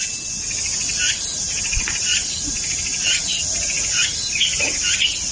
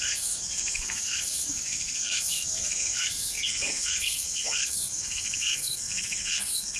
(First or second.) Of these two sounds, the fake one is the second